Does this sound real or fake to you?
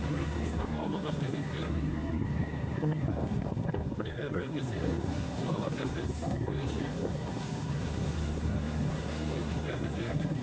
fake